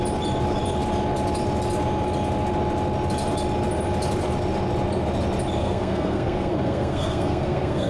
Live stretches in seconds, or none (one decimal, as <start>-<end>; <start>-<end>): 0.0-5.6